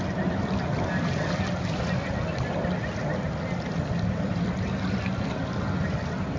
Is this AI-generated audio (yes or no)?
no